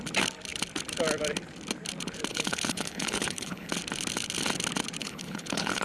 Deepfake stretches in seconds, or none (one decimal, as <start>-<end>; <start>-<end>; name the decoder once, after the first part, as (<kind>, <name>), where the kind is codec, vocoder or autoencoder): 2.3-3.7 (codec, HILCodec); 5.0-5.8